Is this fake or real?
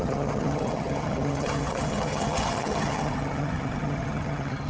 fake